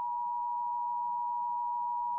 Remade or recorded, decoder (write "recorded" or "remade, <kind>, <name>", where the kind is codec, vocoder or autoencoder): recorded